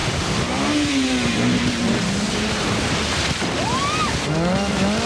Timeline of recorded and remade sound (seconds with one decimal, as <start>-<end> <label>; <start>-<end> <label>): 0.0-3.1 remade; 3.1-5.1 recorded